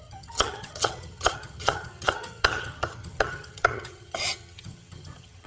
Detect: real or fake fake